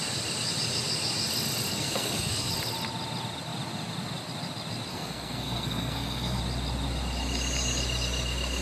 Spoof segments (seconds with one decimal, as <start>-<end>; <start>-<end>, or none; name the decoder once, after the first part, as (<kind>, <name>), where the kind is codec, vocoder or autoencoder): 1.7-2.5 (codec, SNAC); 4.9-6.4